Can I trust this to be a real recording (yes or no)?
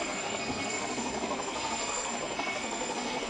no